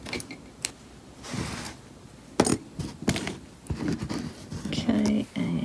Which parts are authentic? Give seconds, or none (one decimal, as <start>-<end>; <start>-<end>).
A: 0.0-5.6